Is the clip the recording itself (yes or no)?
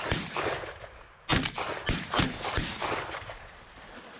yes